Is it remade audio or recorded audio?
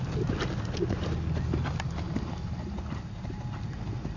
recorded